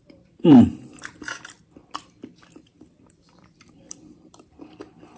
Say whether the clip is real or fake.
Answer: fake